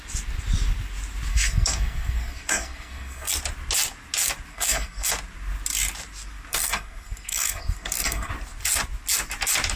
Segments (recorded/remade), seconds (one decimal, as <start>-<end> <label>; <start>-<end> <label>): 0.0-1.3 recorded; 1.3-3.3 remade; 3.3-4.5 recorded; 4.5-5.1 remade; 5.1-6.5 recorded; 6.5-8.3 remade; 8.3-9.8 recorded